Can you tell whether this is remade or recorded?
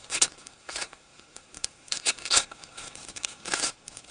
remade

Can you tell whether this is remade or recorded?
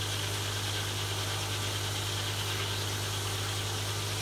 recorded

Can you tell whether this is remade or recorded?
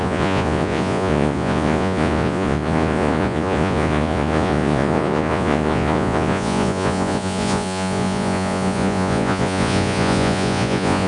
remade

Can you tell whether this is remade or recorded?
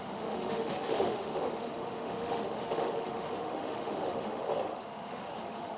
remade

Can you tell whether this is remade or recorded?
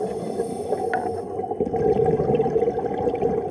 recorded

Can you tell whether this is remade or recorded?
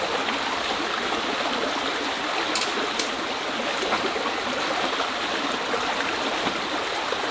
recorded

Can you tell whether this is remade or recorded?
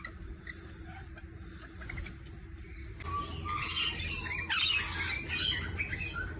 recorded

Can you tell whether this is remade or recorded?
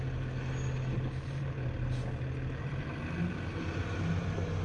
recorded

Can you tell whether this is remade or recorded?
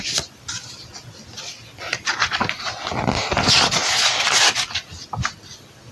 recorded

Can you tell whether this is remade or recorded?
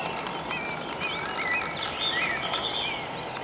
recorded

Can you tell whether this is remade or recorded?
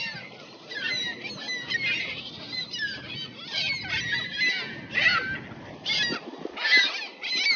recorded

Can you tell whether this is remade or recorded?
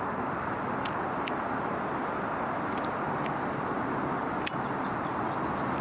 recorded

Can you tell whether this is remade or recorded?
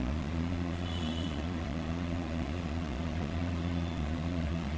remade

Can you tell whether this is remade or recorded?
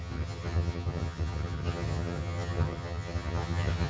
remade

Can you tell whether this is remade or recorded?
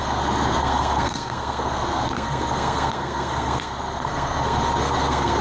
remade